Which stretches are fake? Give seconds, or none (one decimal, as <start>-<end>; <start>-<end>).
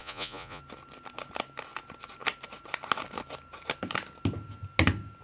0.0-0.6